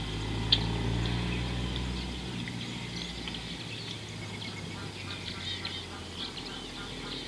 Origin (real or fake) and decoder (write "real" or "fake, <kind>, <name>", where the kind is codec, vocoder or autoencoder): real